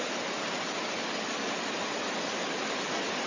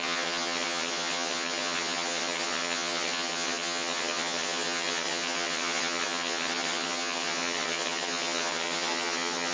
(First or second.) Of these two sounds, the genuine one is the first